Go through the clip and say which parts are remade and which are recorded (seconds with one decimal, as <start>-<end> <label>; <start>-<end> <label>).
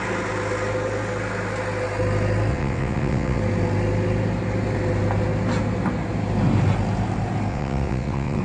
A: 0.0-2.5 recorded; 2.5-3.4 remade; 3.4-7.5 recorded; 7.5-8.4 remade